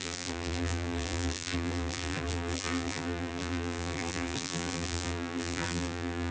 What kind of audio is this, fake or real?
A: fake